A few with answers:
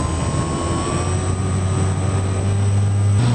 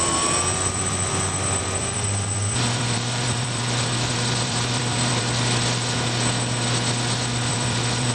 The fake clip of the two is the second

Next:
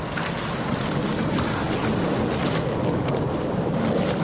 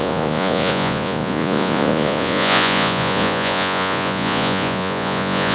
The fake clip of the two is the second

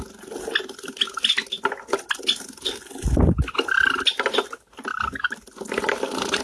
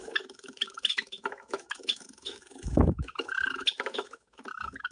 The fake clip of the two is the second